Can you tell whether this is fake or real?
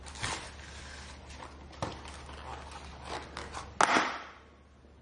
real